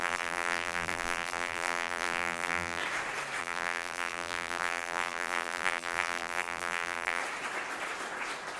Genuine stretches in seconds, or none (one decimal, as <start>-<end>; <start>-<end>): 2.8-3.4; 7.2-8.6